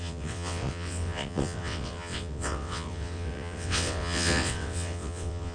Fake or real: fake